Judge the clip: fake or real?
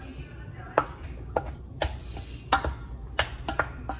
real